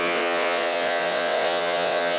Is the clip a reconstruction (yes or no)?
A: yes